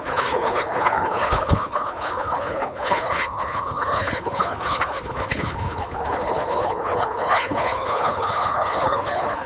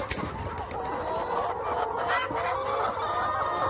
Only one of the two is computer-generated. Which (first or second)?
first